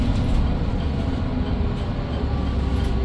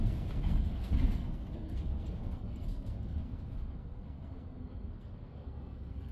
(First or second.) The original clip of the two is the first